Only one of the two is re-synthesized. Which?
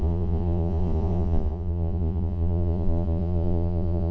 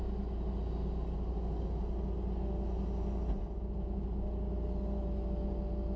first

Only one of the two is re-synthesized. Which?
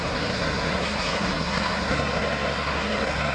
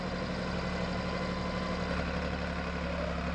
first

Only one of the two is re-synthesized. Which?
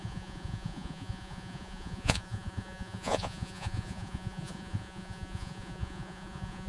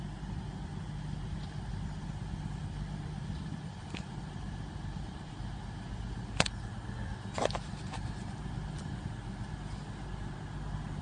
first